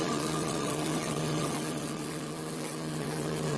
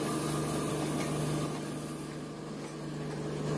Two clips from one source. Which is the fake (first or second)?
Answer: first